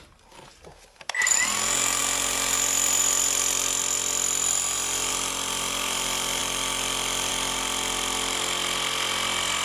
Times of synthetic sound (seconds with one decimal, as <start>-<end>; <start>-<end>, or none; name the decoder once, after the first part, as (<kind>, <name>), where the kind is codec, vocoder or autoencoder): none